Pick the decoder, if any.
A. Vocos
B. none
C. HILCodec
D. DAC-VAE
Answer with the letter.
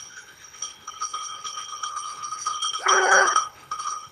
C